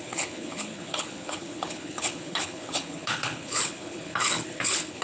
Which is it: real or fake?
fake